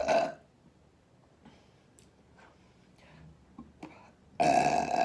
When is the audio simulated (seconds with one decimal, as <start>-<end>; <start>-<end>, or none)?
none